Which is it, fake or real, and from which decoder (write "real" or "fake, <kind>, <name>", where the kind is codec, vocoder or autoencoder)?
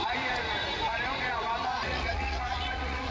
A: fake, vocoder, Vocos